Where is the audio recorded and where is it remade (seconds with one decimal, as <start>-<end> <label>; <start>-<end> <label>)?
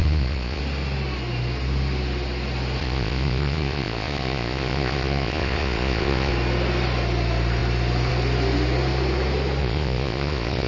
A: 0.0-0.6 remade; 0.6-2.8 recorded; 2.8-6.3 remade; 6.3-9.6 recorded; 9.6-10.7 remade